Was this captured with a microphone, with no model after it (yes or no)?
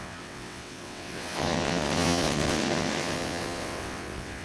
no